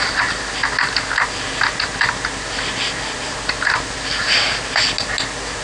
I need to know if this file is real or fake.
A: real